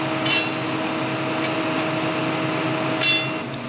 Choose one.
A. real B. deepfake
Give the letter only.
A